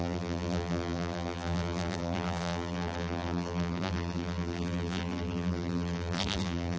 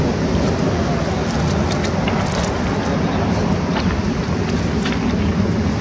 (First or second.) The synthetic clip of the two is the first